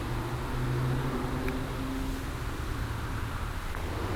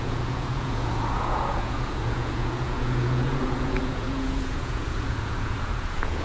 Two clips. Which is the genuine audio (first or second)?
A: first